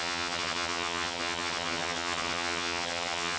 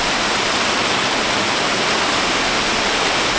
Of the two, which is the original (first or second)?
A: second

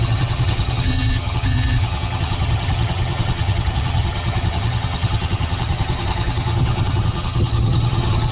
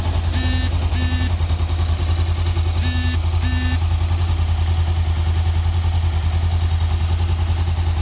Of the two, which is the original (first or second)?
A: second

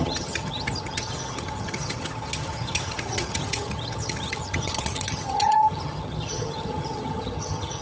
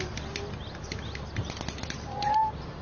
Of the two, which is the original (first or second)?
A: second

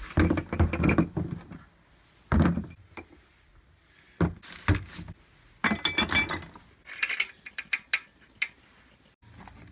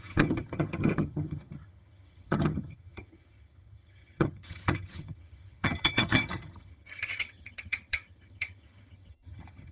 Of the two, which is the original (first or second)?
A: first